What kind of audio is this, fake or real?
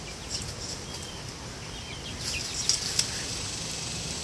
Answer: real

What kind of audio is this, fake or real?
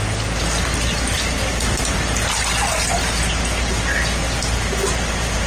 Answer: real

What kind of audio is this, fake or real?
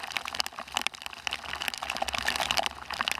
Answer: real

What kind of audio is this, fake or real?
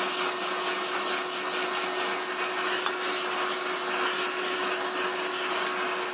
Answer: real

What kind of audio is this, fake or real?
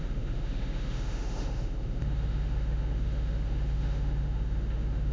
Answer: fake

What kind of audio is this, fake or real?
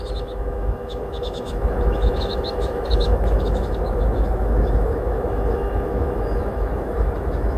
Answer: fake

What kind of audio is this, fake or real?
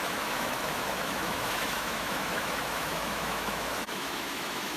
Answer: fake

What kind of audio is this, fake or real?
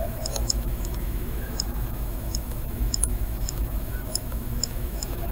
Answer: fake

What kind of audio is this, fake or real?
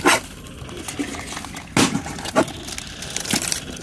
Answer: real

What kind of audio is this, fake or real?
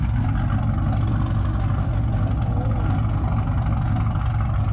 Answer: real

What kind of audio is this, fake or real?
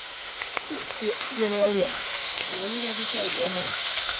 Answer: fake